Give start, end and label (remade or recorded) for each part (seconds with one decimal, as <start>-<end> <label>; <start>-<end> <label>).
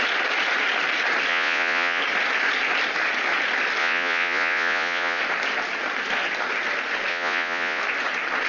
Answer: 0.0-1.3 recorded; 1.3-2.0 remade; 2.0-3.8 recorded; 3.8-5.2 remade; 5.2-7.1 recorded; 7.1-7.8 remade; 7.8-8.5 recorded